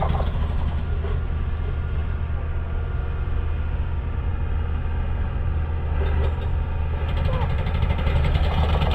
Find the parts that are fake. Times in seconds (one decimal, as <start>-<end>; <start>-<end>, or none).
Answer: none